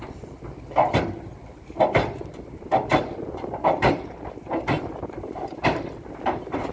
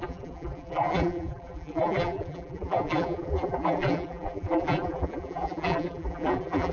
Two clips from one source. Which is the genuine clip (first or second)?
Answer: first